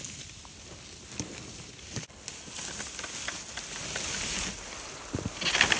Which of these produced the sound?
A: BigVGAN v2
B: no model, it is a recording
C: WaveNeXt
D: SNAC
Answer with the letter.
B